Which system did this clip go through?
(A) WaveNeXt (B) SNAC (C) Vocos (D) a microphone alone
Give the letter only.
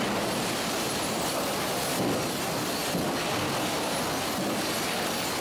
D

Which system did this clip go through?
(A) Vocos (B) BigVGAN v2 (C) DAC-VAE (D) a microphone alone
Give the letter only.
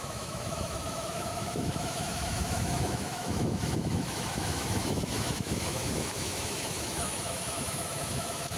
C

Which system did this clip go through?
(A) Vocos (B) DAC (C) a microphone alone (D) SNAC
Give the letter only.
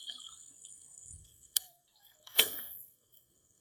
D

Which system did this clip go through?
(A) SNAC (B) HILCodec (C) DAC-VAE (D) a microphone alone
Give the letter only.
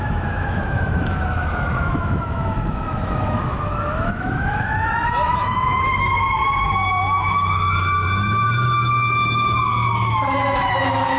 C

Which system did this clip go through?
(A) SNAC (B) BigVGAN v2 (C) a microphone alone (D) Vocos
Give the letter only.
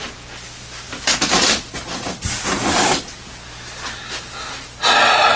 C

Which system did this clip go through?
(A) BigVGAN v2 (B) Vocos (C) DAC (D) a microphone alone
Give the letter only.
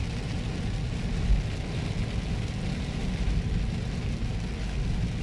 D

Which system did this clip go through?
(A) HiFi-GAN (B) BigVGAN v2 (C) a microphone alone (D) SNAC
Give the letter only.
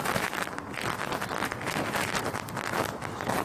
C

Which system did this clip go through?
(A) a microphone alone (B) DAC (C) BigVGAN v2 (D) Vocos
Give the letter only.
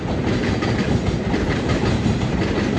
A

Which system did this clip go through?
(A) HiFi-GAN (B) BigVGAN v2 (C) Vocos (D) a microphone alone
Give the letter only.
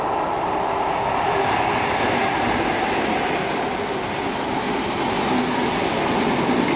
D